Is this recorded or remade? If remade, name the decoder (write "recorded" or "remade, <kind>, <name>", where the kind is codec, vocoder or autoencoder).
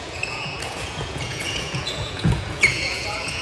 remade, vocoder, Vocos